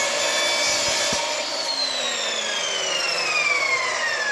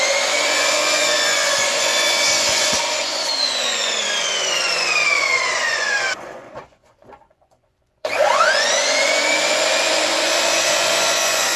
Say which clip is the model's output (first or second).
second